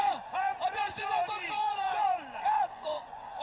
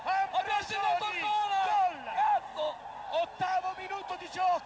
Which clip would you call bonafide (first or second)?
second